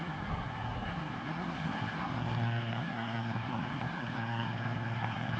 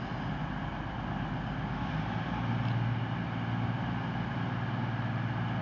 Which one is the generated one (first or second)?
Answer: first